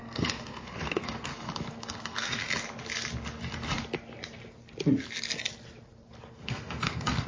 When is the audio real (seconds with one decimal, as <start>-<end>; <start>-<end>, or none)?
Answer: 1.3-1.9; 2.4-6.3

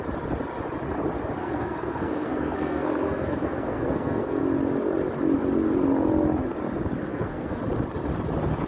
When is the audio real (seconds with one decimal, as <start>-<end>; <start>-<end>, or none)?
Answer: 0.0-1.4; 4.4-7.1; 7.6-8.7